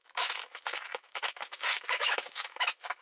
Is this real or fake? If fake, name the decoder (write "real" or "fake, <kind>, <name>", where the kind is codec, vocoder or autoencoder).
fake, autoencoder, DAC-VAE